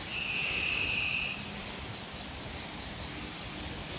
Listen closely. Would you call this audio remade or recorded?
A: recorded